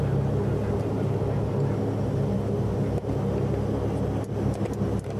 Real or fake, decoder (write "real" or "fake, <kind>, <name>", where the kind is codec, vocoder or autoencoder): real